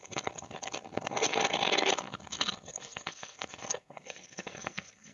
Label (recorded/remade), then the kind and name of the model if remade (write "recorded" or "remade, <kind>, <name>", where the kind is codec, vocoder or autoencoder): remade, codec, SNAC